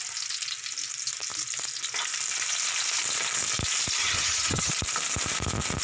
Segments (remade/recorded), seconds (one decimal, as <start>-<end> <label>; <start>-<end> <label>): 0.0-4.0 recorded; 4.0-4.7 remade; 4.7-5.8 recorded